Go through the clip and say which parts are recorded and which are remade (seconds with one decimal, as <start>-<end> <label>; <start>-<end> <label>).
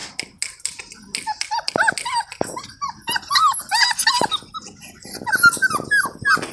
0.0-6.5 recorded